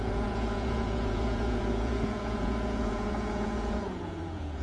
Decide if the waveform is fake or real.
fake